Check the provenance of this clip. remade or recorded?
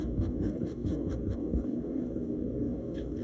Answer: remade